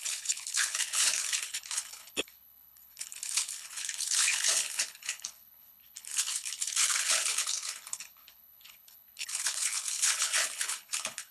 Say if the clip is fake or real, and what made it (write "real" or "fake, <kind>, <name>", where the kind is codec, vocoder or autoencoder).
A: fake, codec, HILCodec